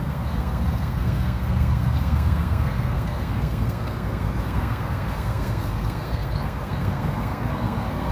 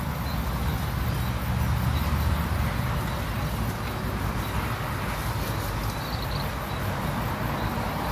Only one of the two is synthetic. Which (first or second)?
first